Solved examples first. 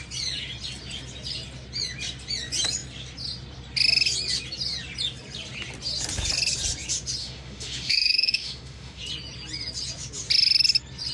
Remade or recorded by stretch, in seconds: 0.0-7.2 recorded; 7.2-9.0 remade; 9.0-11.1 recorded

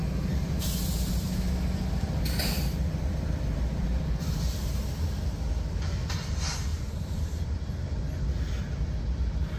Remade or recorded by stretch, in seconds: 0.0-9.6 recorded

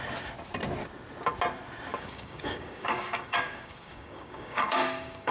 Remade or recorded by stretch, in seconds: 0.0-1.9 recorded; 1.9-5.3 remade

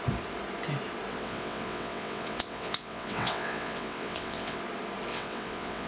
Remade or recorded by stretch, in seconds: 0.0-1.1 recorded; 1.1-4.6 remade; 4.6-5.1 recorded; 5.1-5.9 remade